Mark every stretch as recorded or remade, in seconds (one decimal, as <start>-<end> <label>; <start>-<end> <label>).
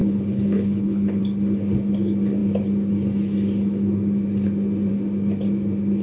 0.0-1.2 remade; 1.2-6.0 recorded